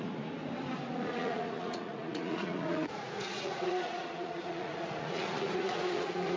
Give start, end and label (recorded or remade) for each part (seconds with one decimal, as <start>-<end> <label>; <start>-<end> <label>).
0.0-0.4 remade; 0.4-0.9 recorded; 0.9-6.4 remade